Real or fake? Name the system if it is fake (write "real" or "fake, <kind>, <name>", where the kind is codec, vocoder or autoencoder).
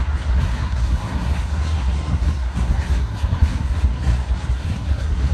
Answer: fake, codec, SNAC